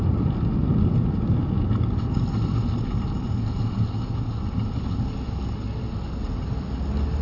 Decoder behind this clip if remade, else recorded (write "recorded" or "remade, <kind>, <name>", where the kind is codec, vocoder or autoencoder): recorded